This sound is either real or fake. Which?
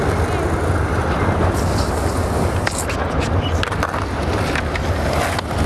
real